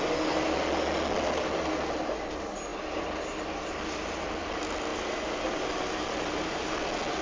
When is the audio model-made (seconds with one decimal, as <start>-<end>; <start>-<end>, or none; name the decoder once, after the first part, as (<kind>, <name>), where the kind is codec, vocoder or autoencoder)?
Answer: none